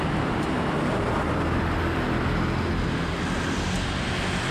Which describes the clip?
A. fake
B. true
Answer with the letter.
B